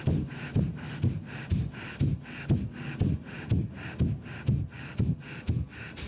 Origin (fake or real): real